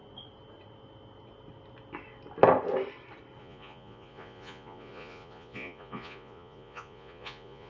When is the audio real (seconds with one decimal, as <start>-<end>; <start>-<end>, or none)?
0.0-3.4